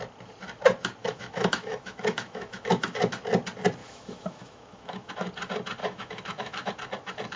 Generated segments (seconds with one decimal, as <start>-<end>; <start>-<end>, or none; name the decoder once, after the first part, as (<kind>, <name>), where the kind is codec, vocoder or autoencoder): 1.0-3.0 (autoencoder, DAC-VAE); 3.8-5.1; 5.8-6.7